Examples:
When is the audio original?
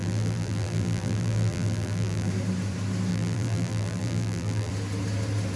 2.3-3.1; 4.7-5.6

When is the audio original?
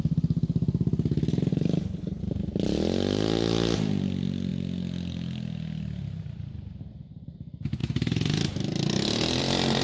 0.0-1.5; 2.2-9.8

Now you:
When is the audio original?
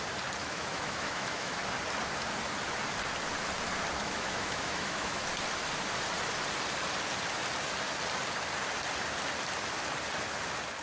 0.0-0.4; 1.6-4.0; 5.3-10.8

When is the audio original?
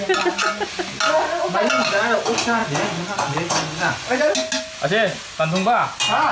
0.0-2.6; 4.2-6.3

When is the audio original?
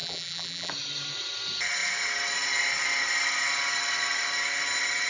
0.7-5.1